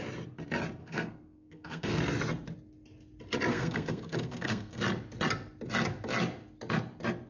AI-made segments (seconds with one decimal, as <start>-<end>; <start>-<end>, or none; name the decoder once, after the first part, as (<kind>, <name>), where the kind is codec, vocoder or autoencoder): 0.8-2.0 (codec, SNAC); 3.5-4.8